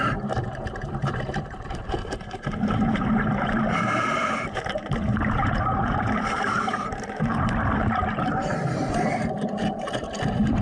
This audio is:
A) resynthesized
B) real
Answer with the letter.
A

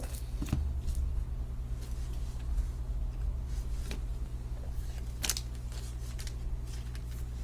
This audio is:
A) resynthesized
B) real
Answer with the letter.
B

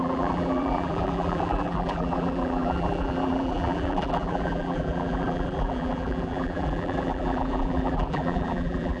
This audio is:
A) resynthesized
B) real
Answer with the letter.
A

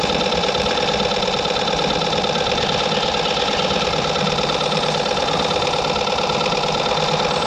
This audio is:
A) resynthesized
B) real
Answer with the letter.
A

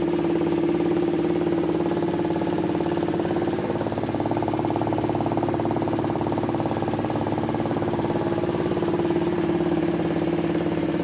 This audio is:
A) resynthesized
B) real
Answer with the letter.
A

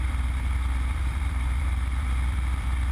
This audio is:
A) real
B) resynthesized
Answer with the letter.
B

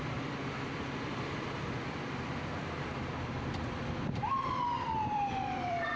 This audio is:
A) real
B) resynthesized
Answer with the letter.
B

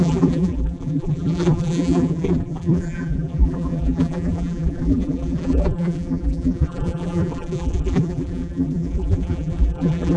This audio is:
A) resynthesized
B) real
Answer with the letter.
A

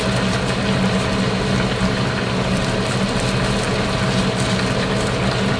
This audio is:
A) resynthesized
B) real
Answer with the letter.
B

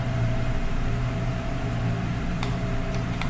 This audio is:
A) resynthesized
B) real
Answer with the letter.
A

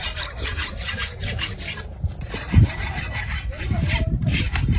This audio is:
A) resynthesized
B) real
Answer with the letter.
A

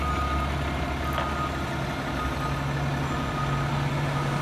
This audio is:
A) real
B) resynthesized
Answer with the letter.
A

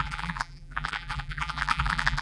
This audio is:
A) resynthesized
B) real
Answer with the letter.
A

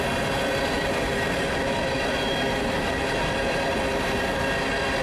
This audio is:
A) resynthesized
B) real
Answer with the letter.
B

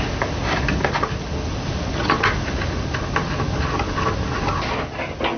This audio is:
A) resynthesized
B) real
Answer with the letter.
B